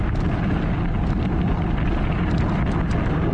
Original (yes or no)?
yes